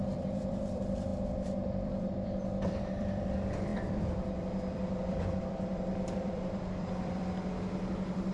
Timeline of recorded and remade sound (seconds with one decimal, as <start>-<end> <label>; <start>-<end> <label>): 0.0-7.2 remade; 7.2-7.9 recorded; 7.9-8.3 remade